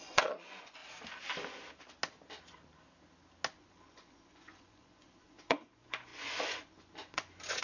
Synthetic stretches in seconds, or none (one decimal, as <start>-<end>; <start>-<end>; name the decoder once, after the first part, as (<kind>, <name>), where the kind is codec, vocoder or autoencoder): 0.0-0.8 (vocoder, Vocos); 3.6-7.6